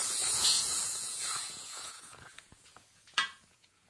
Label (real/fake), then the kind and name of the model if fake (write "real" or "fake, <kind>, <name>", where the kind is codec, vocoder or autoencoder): fake, vocoder, Vocos